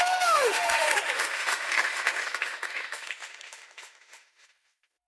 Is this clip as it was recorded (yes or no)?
no